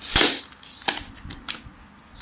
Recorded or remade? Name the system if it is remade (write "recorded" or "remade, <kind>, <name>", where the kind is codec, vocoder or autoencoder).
recorded